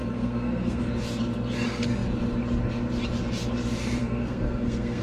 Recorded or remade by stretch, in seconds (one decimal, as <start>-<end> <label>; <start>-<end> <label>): 0.0-0.8 remade; 0.8-4.0 recorded; 4.0-5.0 remade